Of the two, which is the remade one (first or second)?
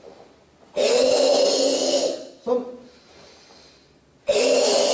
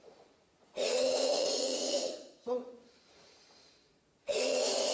second